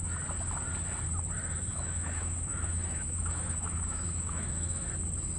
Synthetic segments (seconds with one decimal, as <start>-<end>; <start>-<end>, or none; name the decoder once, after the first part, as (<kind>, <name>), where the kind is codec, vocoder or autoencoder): 1.7-4.9 (autoencoder, DAC-VAE)